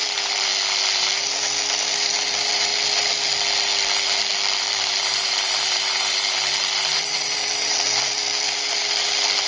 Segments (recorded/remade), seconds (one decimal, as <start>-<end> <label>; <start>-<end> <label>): 0.0-0.5 remade; 0.5-1.9 recorded; 1.9-2.7 remade; 2.7-4.6 recorded; 4.6-9.5 remade